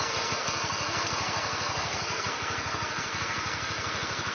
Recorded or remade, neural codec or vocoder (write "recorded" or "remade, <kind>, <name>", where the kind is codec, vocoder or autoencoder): remade, codec, SNAC